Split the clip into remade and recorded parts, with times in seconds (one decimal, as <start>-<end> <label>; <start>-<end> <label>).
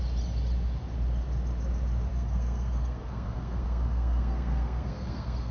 0.0-2.1 recorded; 2.1-5.5 remade